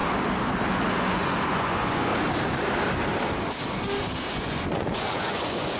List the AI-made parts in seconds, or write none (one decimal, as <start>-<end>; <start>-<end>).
1.0-2.1; 4.3-5.8